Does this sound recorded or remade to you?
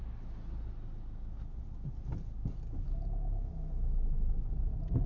recorded